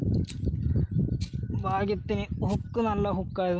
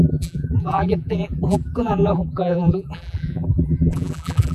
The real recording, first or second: first